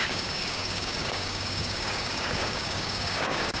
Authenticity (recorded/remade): remade